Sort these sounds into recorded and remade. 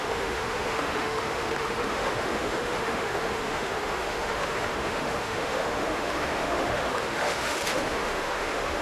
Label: remade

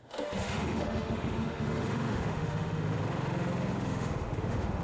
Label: remade